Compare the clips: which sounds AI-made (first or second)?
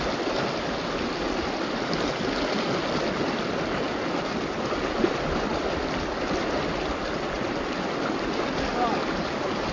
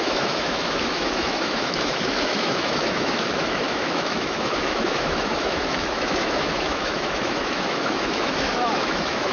second